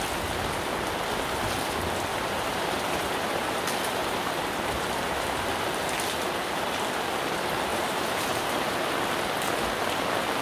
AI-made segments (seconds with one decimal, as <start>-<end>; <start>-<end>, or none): 2.1-3.6; 4.0-5.5; 7.7-8.7